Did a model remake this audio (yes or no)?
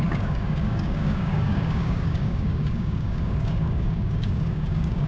yes